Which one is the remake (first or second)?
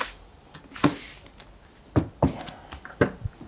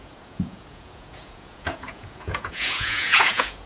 second